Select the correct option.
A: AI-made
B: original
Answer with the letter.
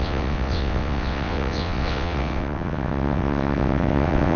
A